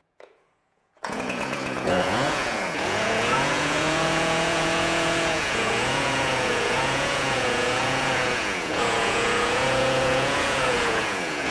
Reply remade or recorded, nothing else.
remade